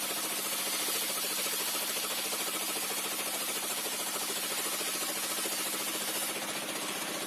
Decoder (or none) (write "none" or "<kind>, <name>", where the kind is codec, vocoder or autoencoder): none